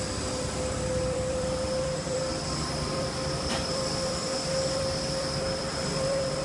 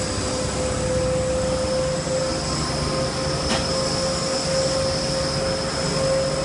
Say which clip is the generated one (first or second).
first